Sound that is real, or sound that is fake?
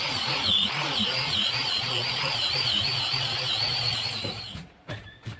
fake